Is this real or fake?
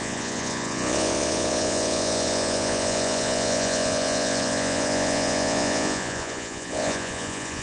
fake